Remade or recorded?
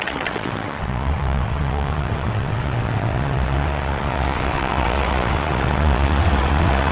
remade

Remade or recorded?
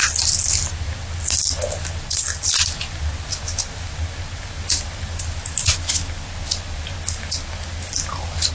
recorded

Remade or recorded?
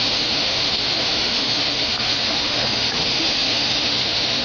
remade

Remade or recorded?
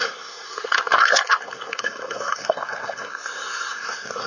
remade